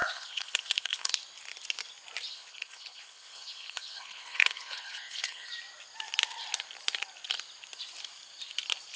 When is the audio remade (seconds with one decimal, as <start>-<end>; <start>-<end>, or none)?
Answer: 0.0-1.1; 2.3-5.5